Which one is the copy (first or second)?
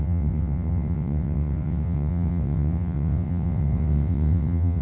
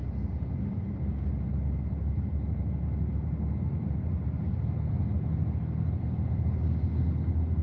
first